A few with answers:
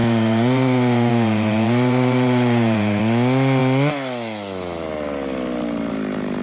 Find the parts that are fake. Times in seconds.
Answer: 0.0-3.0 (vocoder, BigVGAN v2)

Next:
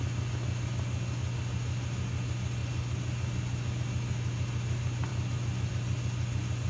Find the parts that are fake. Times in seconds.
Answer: none

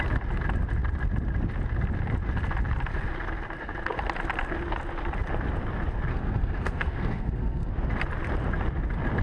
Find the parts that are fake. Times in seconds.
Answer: 6.1-7.7 (codec, SNAC)

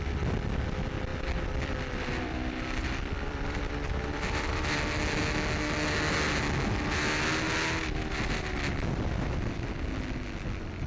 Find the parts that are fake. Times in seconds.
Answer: 1.1-4.6 (vocoder, BigVGAN v2)

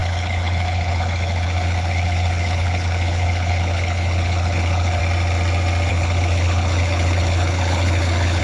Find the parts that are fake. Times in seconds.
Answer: 0.0-5.0 (codec, HILCodec); 5.9-8.4

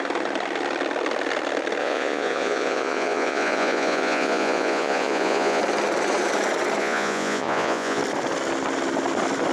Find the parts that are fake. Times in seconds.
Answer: 1.8-5.6 (vocoder, Vocos); 6.8-8.0

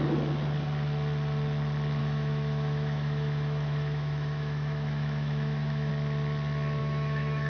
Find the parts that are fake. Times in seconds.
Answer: 2.0-5.9 (autoencoder, DAC-VAE); 6.8-7.5